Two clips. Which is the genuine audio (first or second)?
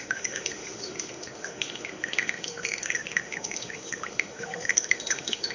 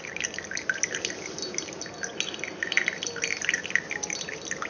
second